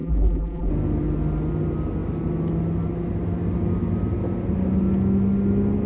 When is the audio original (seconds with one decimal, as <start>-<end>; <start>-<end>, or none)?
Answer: 0.7-5.9